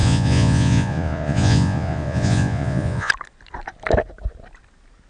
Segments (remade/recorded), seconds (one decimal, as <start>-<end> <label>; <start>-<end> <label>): 0.0-3.1 remade; 3.1-5.1 recorded